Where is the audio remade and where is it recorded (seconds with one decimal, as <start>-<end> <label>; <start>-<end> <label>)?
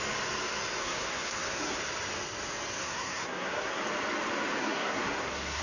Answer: 0.0-0.8 recorded; 0.8-1.8 remade; 1.8-2.8 recorded; 2.8-3.8 remade; 3.8-4.6 recorded; 4.6-5.6 remade